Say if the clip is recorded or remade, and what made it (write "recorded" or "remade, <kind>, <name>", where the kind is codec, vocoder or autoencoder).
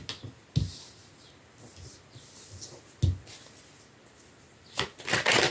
recorded